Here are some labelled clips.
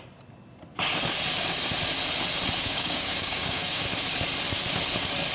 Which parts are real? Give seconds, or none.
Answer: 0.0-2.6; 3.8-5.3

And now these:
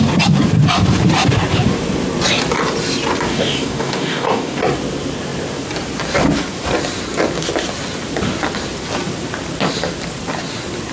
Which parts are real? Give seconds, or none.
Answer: 0.0-3.3; 4.6-10.9